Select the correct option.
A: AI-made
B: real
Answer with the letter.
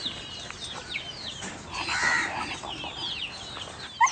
B